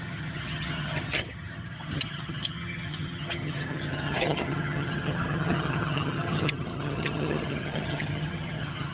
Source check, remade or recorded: remade